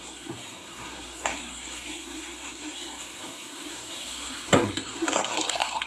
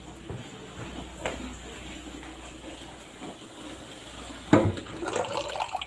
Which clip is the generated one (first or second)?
first